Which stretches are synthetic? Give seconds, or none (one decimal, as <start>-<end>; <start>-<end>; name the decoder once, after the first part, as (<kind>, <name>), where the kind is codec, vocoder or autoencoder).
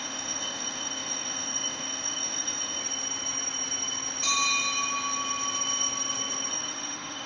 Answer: 0.0-2.8 (autoencoder, DAC-VAE); 6.5-7.3